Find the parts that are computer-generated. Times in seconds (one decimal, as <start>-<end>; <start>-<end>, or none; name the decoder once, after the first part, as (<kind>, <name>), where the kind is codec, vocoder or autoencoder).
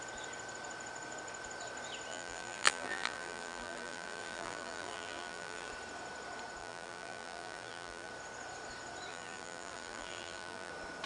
2.1-5.7 (vocoder, BigVGAN v2); 6.6-8.1; 9.1-10.7